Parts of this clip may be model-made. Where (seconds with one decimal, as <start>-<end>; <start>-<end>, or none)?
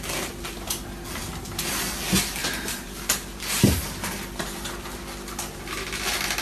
2.4-3.8